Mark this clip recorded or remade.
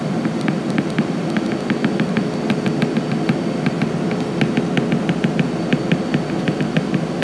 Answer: recorded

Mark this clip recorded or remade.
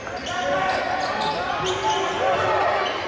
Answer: recorded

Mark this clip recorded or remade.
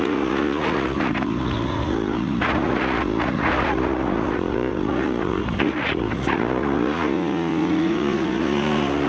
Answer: remade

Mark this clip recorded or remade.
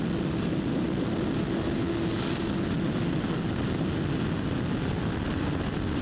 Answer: recorded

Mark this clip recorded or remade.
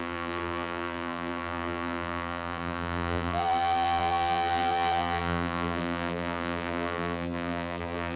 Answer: remade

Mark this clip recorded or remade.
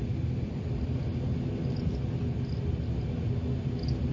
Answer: recorded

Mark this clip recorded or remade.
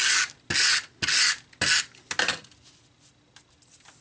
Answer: recorded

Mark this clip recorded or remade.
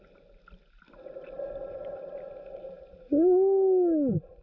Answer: recorded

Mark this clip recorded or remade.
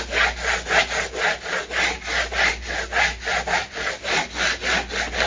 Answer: recorded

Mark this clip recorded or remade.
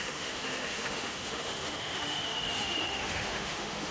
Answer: remade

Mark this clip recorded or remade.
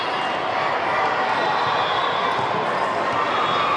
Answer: recorded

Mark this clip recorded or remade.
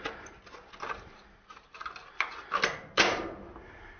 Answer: recorded